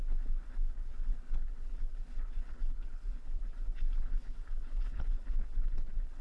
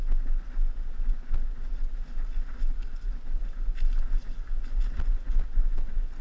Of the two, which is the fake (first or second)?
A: first